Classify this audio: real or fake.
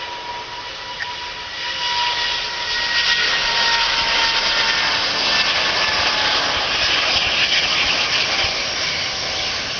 real